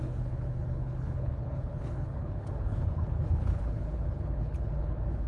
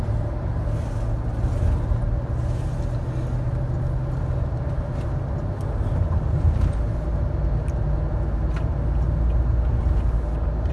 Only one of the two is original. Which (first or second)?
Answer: second